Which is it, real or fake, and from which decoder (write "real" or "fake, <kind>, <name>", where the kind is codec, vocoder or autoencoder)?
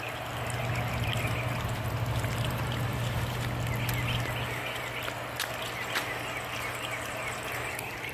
real